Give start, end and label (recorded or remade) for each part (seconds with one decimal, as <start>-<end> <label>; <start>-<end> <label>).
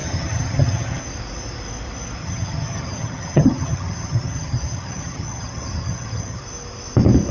0.0-1.0 remade; 1.0-2.2 recorded; 2.2-6.4 remade; 6.4-7.3 recorded